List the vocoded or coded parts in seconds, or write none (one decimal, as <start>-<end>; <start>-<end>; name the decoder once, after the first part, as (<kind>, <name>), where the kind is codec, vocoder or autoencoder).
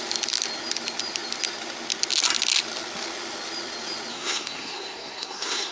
4.1-5.7 (codec, SNAC)